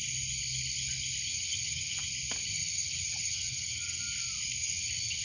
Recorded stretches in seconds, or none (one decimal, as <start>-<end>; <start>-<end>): 0.0-1.3; 2.0-2.5; 4.0-4.6